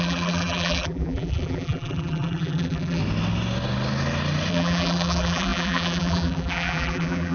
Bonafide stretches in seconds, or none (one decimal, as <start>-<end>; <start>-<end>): 3.0-4.5